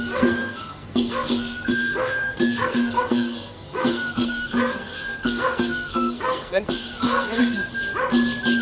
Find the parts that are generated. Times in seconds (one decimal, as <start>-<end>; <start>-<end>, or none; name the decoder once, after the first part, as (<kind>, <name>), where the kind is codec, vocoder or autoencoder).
0.0-7.7 (codec, SNAC)

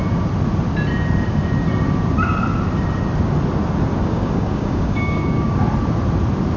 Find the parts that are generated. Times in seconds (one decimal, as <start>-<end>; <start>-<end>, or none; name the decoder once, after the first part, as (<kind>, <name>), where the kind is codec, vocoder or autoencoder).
4.0-5.6 (codec, DAC)

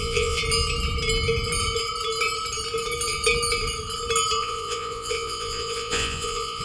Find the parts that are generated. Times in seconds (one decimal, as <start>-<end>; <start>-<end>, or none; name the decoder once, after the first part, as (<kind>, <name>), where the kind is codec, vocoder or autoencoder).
0.0-0.4 (vocoder, Vocos); 4.4-6.6

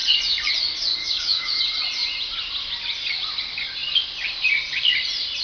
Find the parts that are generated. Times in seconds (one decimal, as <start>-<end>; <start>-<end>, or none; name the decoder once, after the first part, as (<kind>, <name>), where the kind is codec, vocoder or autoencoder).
1.0-1.6 (codec, DAC)

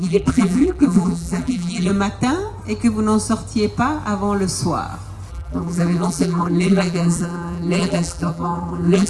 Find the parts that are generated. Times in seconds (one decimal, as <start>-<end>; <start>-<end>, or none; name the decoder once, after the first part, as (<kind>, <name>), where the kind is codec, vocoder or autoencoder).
0.0-1.9 (vocoder, BigVGAN v2); 5.3-9.1